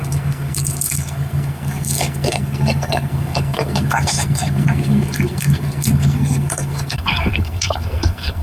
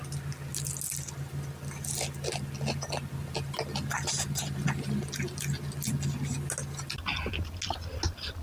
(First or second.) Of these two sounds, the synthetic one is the first